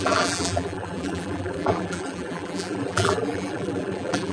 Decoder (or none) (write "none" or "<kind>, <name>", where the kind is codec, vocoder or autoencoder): vocoder, BigVGAN v2